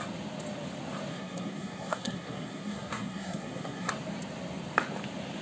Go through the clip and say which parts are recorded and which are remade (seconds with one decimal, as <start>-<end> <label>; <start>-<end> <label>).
0.0-1.1 recorded; 1.1-3.9 remade; 3.9-5.4 recorded